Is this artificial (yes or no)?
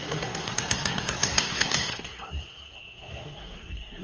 yes